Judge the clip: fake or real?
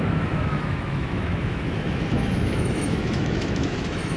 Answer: fake